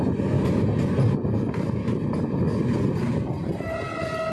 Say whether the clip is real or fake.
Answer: real